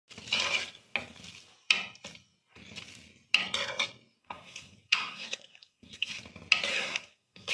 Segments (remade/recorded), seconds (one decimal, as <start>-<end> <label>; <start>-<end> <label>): 0.0-4.2 recorded; 4.2-6.2 remade; 6.2-6.7 recorded; 6.7-7.5 remade